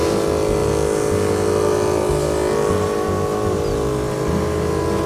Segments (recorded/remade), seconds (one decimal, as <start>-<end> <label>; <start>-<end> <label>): 0.0-5.1 recorded